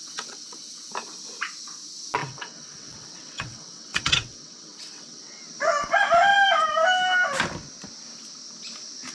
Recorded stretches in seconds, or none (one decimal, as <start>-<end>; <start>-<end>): 0.9-2.2; 5.4-9.1